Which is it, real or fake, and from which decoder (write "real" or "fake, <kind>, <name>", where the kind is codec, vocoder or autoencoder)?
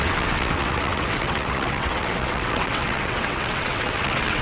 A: fake, vocoder, WaveNeXt